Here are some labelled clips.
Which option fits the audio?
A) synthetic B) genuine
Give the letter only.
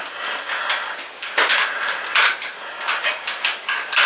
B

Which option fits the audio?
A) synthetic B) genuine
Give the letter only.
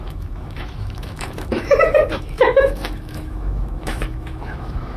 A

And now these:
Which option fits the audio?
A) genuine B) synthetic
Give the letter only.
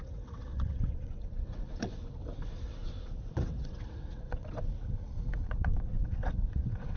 B